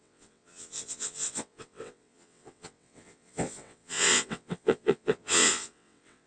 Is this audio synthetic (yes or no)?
yes